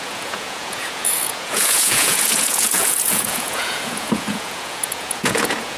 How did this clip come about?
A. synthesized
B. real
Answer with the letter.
A